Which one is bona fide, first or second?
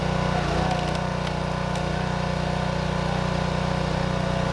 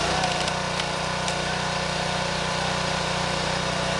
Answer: first